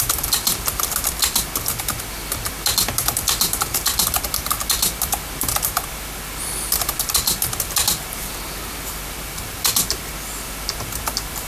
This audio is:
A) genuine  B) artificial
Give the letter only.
A